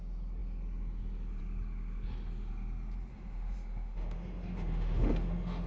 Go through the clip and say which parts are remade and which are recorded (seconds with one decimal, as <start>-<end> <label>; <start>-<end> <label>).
0.0-3.1 recorded; 3.1-5.7 remade